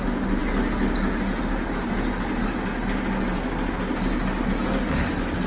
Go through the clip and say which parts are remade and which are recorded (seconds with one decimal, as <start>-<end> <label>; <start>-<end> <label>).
0.0-5.5 recorded